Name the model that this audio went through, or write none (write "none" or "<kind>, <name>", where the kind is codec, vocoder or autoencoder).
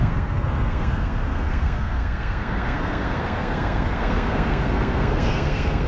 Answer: codec, SNAC